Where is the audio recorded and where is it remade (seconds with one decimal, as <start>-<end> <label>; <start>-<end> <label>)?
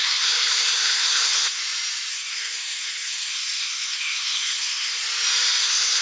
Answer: 0.0-1.6 remade; 1.6-2.1 recorded; 2.1-5.0 remade; 5.0-5.6 recorded; 5.6-6.0 remade